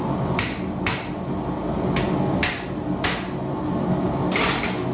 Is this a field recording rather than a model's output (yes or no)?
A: yes